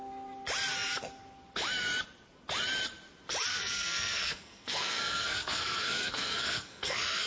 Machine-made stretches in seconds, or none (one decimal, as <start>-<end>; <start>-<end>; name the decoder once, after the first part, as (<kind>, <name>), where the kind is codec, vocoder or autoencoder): 3.5-7.3 (codec, SNAC)